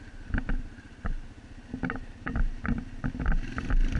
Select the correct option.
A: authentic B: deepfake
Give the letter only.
A